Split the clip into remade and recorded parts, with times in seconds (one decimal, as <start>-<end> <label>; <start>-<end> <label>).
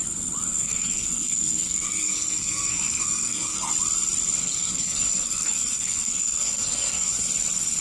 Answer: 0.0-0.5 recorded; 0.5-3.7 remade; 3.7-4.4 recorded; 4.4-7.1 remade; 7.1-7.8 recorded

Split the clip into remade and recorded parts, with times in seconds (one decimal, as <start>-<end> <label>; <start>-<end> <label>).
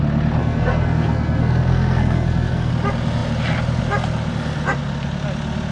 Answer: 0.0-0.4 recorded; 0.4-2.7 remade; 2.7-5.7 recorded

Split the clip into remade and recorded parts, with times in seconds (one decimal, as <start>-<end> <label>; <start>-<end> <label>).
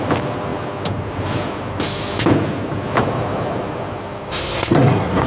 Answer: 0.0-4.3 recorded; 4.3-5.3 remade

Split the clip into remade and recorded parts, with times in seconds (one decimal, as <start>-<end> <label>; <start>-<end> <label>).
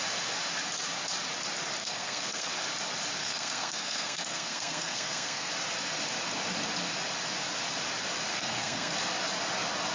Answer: 0.0-1.8 recorded; 1.8-2.5 remade; 2.5-3.2 recorded; 3.2-5.5 remade; 5.5-8.3 recorded; 8.3-8.9 remade; 8.9-9.9 recorded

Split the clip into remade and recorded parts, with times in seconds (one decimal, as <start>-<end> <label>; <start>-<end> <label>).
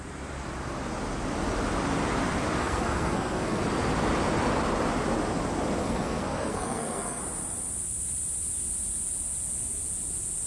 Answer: 0.0-2.6 recorded; 2.6-3.6 remade; 3.6-5.8 recorded; 5.8-7.2 remade; 7.2-10.5 recorded